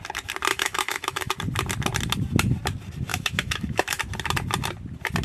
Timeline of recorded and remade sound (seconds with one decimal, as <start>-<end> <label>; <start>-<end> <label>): 0.0-0.5 recorded; 0.5-1.3 remade; 1.3-3.1 recorded; 3.1-4.0 remade; 4.0-5.2 recorded